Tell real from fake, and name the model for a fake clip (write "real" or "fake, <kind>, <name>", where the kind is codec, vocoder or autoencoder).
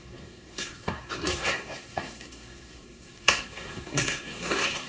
fake, codec, SNAC